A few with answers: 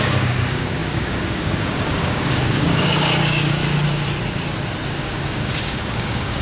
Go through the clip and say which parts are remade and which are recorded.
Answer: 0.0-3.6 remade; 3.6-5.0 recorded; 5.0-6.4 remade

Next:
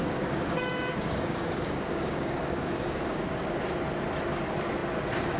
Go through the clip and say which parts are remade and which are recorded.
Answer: 0.0-3.2 remade; 3.2-5.4 recorded